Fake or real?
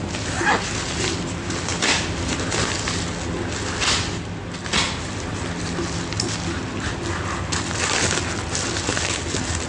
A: real